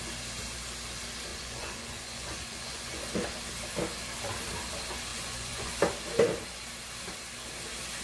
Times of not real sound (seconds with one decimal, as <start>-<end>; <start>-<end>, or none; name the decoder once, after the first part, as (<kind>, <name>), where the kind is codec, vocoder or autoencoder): 1.3-3.0 (vocoder, Vocos); 5.1-5.7

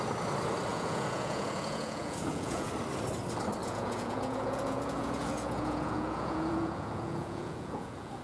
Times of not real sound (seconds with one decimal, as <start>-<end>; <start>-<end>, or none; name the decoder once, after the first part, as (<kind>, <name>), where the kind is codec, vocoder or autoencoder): 0.7-2.7 (vocoder, Vocos); 3.6-8.2

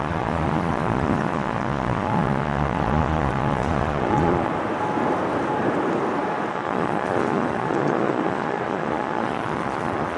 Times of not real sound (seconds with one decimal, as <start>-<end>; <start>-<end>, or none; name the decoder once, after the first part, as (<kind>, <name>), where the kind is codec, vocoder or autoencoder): 0.0-4.5 (vocoder, Vocos); 6.5-10.2

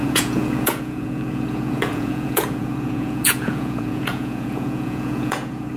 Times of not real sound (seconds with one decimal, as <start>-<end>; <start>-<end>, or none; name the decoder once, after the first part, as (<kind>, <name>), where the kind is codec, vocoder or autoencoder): 0.0-5.8 (vocoder, Vocos)